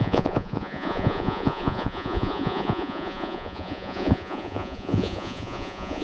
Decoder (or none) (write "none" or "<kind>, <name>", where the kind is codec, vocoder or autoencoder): vocoder, Vocos